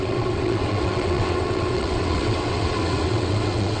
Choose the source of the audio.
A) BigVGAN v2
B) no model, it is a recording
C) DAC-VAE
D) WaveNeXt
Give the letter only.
D